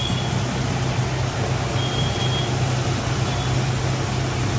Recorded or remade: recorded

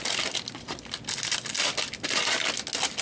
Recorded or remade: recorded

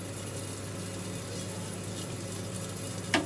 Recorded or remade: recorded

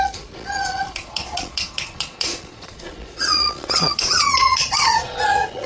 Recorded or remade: remade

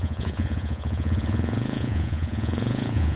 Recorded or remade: remade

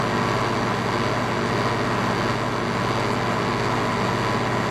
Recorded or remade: recorded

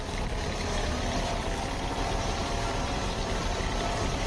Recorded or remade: remade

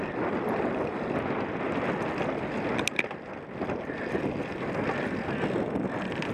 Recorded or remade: recorded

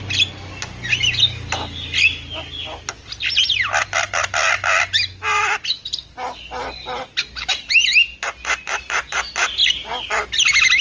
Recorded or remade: recorded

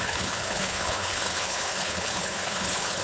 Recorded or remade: remade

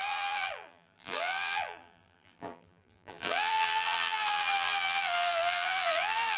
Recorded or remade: remade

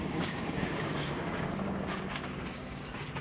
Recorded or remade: remade